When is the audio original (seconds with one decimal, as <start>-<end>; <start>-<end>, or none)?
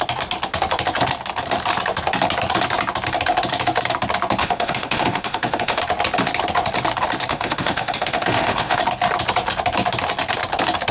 0.0-4.4; 5.8-7.3; 8.8-10.9